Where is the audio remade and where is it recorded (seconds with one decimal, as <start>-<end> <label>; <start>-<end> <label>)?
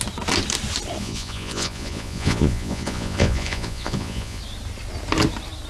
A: 0.0-1.0 recorded; 1.0-4.4 remade; 4.4-5.7 recorded